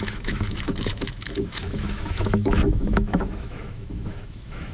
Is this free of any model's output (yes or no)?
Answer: no